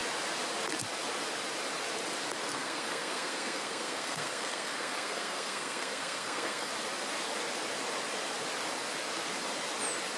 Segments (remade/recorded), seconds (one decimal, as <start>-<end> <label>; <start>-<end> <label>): 0.0-2.5 recorded; 2.5-6.7 remade; 6.7-10.2 recorded